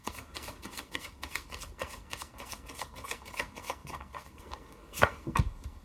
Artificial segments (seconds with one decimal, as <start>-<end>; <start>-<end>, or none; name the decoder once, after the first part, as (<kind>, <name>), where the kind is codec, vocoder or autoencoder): 0.0-5.8 (codec, SNAC)